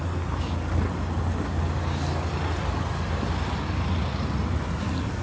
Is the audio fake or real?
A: real